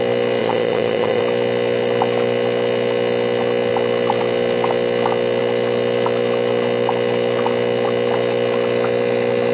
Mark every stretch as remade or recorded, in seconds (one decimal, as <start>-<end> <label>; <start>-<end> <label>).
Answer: 0.0-0.4 recorded; 0.4-1.2 remade; 1.2-9.5 recorded